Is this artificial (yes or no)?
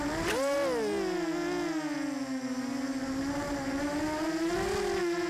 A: no